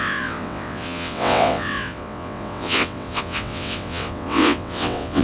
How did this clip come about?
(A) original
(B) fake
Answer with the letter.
B